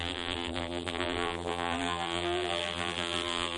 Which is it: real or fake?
fake